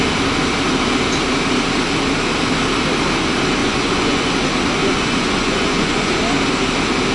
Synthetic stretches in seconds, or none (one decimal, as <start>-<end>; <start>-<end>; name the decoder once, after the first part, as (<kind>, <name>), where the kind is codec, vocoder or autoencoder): 3.6-4.3 (vocoder, Vocos); 4.8-6.2